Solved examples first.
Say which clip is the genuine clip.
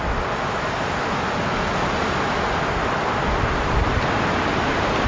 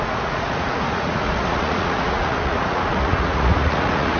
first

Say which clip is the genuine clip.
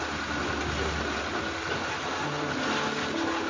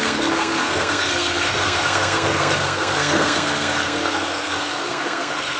first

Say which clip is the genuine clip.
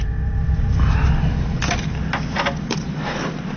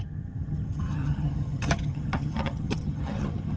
first